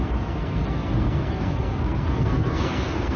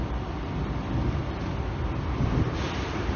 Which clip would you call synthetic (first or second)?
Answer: first